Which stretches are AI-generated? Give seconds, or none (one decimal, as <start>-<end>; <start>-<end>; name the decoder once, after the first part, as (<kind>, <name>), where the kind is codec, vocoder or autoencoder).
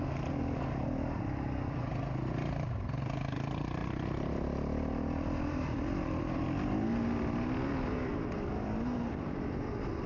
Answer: none